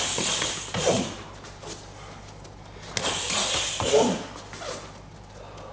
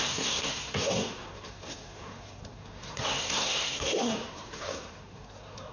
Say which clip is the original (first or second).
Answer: first